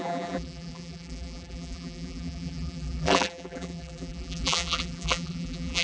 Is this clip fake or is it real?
fake